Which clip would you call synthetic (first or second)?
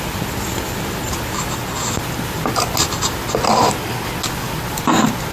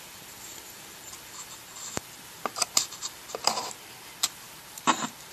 second